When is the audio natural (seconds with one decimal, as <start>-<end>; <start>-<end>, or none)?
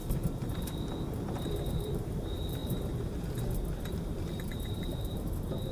0.0-1.7; 2.6-3.9